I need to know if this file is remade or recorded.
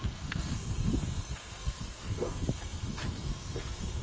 remade